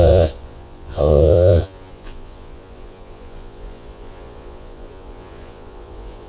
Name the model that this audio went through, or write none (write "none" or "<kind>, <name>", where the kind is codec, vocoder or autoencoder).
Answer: vocoder, Vocos